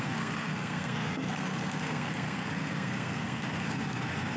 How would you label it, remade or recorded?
remade